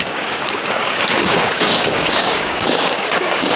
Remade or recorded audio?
remade